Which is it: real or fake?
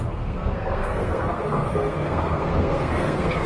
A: fake